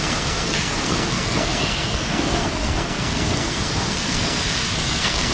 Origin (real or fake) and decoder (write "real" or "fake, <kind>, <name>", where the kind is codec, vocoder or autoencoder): fake, codec, SNAC